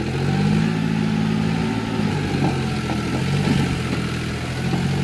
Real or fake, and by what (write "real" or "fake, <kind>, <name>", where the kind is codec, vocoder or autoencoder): real